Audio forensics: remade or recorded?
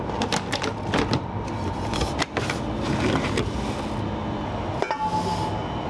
recorded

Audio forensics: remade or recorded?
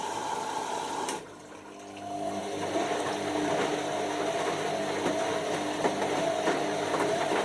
recorded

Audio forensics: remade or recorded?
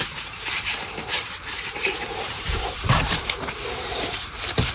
remade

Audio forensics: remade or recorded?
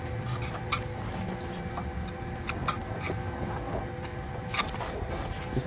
recorded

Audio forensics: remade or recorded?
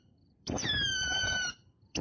remade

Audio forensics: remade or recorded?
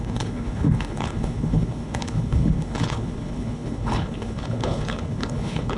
remade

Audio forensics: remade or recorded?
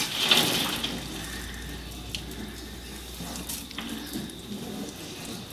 recorded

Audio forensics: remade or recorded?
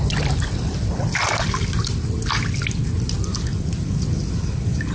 recorded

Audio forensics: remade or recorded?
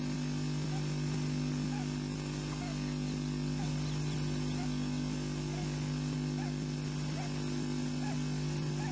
recorded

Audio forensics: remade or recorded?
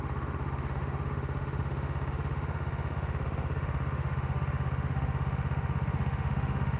remade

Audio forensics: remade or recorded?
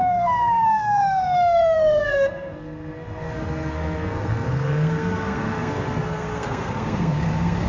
remade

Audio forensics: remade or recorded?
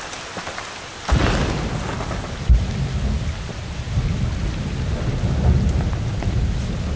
recorded